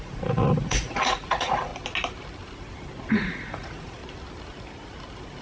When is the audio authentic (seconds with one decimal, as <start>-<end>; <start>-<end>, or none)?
1.7-3.1; 4.0-5.4